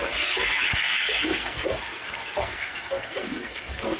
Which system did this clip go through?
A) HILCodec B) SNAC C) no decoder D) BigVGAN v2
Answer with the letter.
B